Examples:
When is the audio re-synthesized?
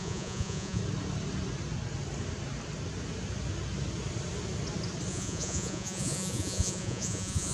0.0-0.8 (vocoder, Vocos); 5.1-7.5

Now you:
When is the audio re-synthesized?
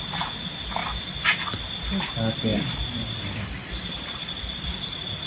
2.5-4.7 (vocoder, BigVGAN v2)